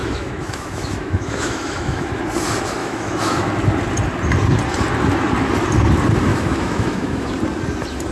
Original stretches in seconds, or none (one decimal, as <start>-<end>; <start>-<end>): 2.2-2.8; 3.5-6.3; 7.3-8.1